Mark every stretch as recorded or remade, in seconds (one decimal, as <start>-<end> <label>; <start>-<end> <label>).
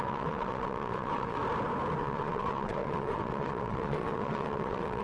0.0-1.4 remade; 1.4-2.0 recorded; 2.0-5.0 remade